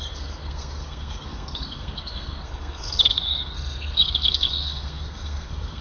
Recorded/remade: remade